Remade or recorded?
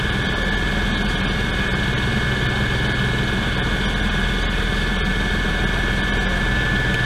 recorded